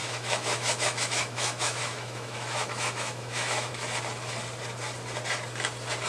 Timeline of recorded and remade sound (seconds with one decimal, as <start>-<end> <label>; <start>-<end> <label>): 0.0-3.7 remade; 3.7-6.1 recorded